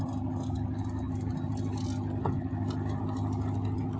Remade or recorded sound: recorded